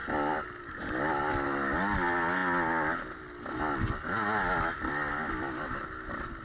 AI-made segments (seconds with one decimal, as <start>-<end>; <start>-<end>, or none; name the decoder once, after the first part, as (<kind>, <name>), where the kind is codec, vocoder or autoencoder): none